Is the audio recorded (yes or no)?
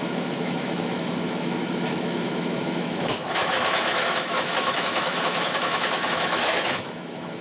no